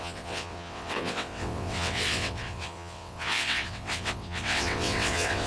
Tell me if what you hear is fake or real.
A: fake